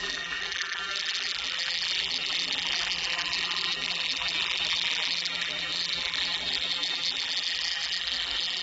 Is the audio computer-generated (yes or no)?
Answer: yes